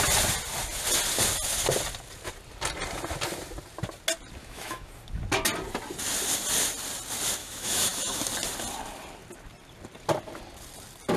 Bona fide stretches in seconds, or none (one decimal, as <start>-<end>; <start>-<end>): 0.0-4.4; 4.9-7.4; 8.2-11.2